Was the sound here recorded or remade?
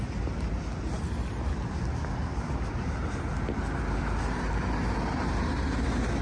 recorded